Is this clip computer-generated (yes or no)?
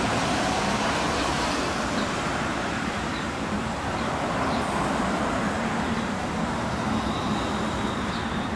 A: yes